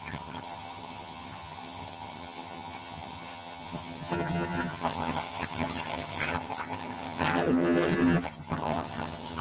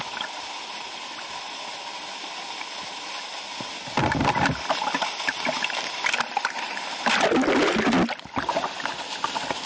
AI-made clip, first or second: first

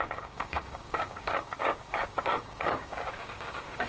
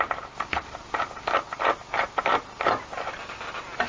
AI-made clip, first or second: first